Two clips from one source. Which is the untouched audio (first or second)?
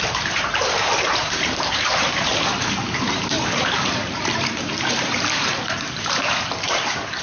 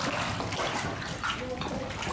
second